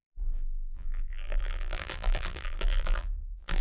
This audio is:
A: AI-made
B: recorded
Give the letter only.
A